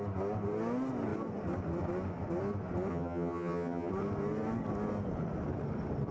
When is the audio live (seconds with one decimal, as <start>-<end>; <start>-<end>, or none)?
0.0-2.9; 3.9-6.1